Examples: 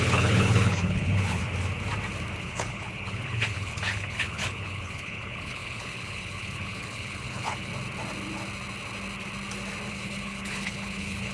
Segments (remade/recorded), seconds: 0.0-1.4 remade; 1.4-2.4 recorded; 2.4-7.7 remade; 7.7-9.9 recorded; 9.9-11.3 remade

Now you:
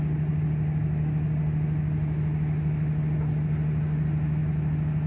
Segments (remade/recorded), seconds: 0.0-5.1 recorded

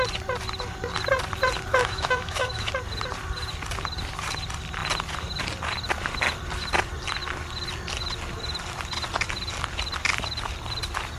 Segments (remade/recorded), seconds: 0.0-1.7 recorded; 1.7-2.7 remade; 2.7-11.2 recorded